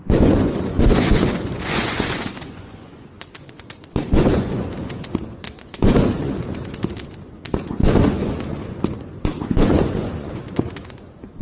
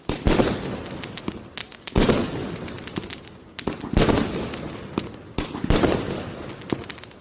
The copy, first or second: first